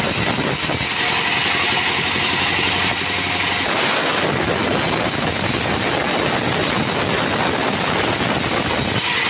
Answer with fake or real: real